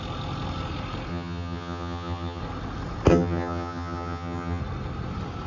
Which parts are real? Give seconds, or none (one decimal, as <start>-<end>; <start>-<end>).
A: 0.0-1.1; 2.4-3.1; 4.6-5.5